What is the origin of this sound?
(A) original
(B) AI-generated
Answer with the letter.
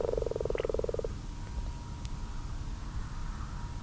A